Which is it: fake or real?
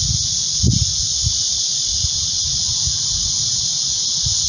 real